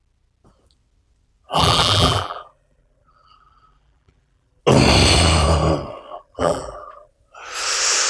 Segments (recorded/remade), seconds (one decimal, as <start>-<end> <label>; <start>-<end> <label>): 0.0-1.5 recorded; 1.5-4.6 remade; 4.6-6.1 recorded; 6.1-7.1 remade; 7.1-8.1 recorded